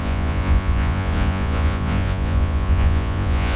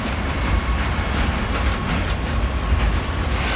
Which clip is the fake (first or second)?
first